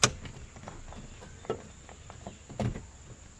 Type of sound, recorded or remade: recorded